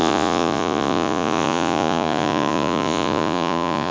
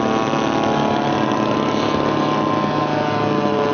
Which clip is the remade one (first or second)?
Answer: first